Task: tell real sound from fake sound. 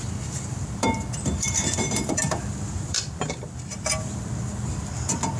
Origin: fake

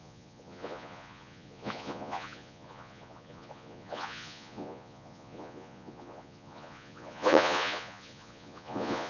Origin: fake